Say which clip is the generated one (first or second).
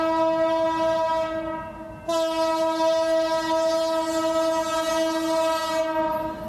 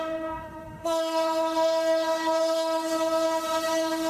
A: second